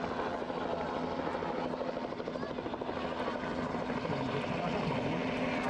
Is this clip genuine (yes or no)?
yes